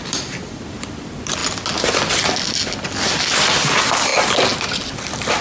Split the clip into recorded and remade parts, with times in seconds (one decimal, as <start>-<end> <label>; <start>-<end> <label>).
0.0-1.4 remade; 1.4-3.5 recorded; 3.5-4.1 remade; 4.1-5.0 recorded; 5.0-5.4 remade